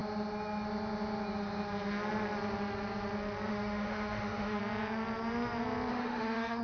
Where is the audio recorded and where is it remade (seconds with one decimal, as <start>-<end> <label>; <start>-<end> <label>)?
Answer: 0.0-3.5 recorded; 3.5-4.6 remade; 4.6-5.9 recorded; 5.9-6.6 remade